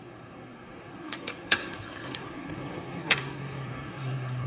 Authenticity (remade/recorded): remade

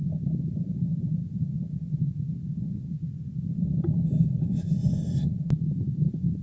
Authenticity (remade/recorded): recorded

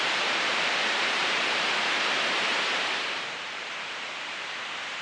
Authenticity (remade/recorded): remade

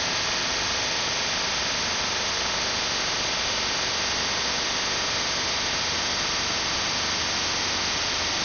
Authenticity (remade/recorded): recorded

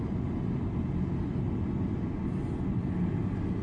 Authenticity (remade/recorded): recorded